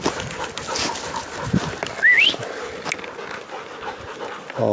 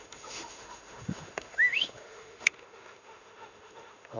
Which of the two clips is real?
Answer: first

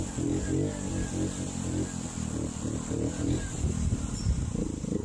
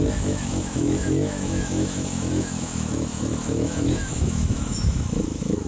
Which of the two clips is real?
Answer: first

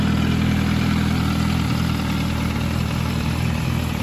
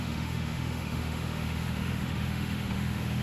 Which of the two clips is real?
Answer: first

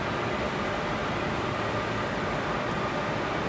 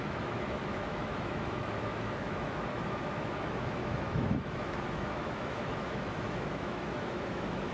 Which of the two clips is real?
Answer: first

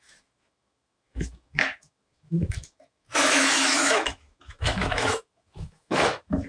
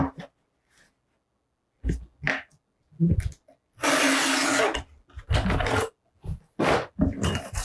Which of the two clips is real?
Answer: second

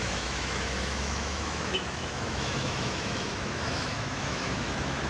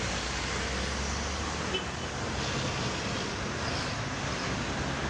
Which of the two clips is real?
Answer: second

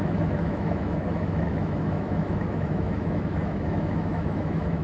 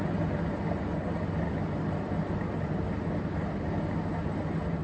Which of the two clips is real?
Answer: second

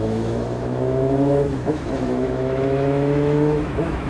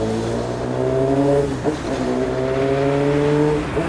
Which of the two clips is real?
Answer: second